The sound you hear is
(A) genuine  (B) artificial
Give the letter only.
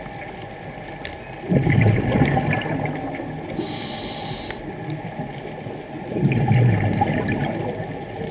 A